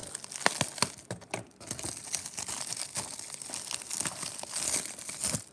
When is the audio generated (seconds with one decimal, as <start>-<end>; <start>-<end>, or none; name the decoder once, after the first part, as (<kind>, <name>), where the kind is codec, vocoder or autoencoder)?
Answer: none